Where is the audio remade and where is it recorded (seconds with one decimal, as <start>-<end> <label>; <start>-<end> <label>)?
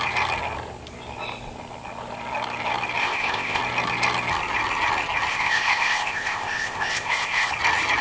0.0-3.0 recorded; 3.0-3.6 remade; 3.6-5.3 recorded; 5.3-7.5 remade; 7.5-8.0 recorded